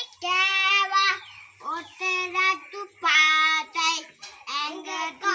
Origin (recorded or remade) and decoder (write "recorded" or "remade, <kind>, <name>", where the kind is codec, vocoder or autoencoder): recorded